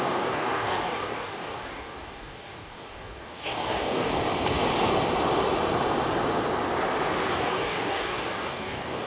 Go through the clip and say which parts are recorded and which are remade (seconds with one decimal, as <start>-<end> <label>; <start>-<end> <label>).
0.0-4.1 remade; 4.1-7.3 recorded; 7.3-9.1 remade